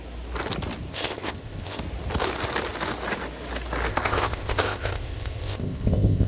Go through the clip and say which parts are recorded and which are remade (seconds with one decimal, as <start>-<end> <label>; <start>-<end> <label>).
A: 0.0-0.9 recorded; 0.9-1.8 remade; 1.8-3.9 recorded; 3.9-6.3 remade